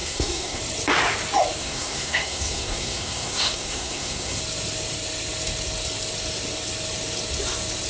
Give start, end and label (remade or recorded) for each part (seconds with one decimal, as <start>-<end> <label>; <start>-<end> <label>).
0.0-0.6 remade; 0.6-1.6 recorded; 1.6-4.4 remade; 4.4-7.9 recorded